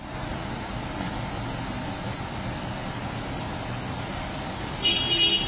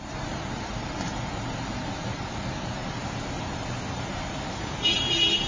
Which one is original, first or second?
first